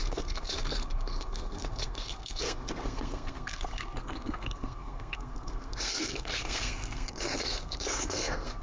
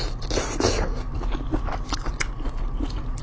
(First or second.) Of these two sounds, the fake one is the first